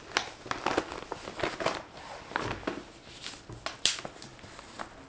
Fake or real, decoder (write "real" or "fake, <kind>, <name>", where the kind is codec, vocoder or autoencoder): real